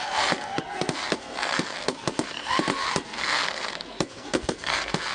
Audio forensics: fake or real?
fake